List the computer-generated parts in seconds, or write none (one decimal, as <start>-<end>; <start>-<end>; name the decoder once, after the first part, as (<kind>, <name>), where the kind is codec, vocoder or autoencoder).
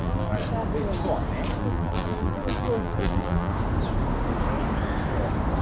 0.0-0.4 (vocoder, BigVGAN v2); 1.6-3.5